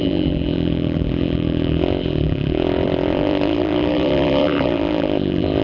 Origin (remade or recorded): remade